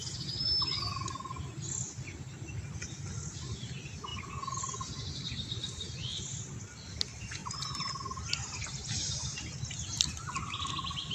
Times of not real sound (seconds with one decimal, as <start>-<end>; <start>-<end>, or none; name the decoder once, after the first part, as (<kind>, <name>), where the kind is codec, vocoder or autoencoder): 6.1-6.6 (vocoder, BigVGAN v2)